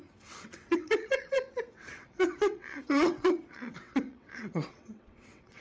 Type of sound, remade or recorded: remade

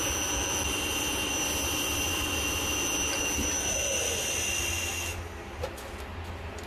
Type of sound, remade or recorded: recorded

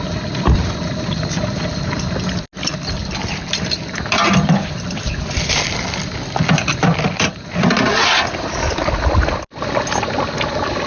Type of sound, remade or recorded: recorded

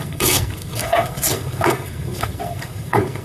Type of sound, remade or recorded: remade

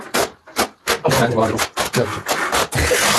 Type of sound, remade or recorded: recorded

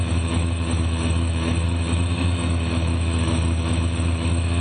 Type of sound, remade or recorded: remade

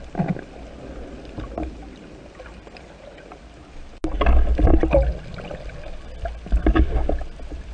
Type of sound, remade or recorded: recorded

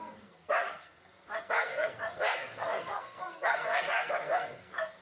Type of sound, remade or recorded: remade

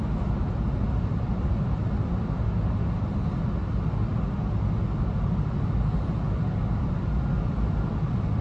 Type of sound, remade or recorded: recorded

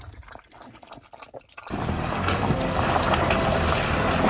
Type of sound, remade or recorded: recorded